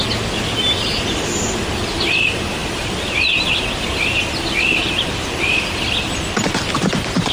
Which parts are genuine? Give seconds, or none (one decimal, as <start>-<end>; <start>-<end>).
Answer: 0.0-7.3